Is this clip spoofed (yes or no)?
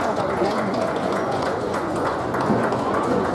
yes